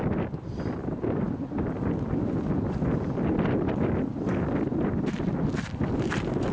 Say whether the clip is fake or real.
real